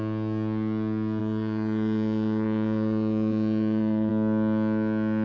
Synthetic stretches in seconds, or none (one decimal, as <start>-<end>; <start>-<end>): 1.2-4.1